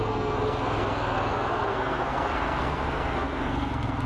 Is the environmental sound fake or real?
fake